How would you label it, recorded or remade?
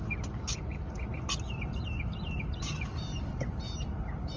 recorded